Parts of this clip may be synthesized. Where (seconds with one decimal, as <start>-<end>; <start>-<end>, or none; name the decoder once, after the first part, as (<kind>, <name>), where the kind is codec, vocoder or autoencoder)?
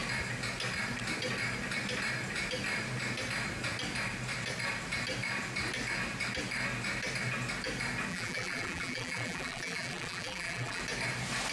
8.1-10.8 (vocoder, BigVGAN v2)